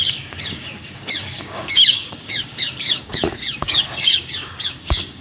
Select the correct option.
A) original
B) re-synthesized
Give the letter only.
B